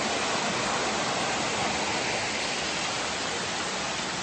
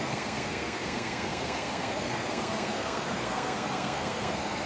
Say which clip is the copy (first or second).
second